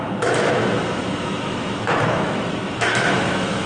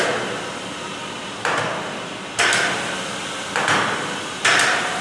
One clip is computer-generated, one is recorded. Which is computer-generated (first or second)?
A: first